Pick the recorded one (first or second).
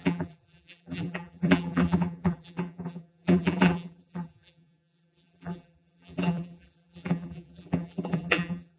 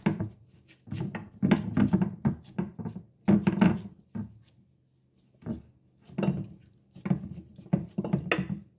second